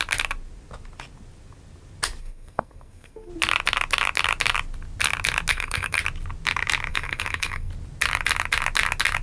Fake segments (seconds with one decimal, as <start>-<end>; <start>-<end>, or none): 2.2-3.3; 5.5-6.0; 6.9-7.7